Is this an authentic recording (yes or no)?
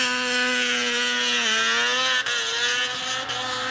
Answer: yes